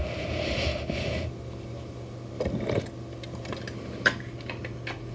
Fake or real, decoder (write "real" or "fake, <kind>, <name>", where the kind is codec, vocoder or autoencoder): real